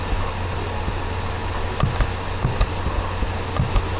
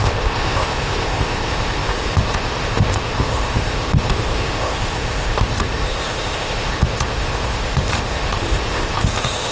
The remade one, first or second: second